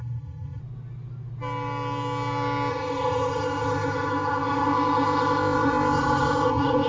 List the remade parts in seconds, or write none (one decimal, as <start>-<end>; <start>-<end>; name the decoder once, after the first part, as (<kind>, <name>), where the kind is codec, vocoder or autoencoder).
0.0-0.6 (codec, ZipCodec); 2.7-6.9